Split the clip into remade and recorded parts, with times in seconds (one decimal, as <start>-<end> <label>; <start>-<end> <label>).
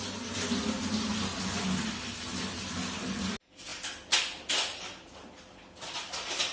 0.0-6.5 recorded